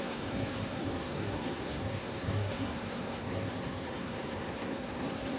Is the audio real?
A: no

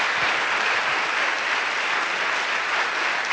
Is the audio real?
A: yes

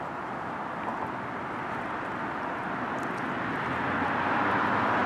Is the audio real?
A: yes